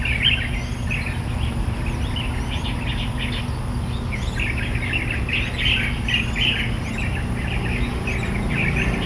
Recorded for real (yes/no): yes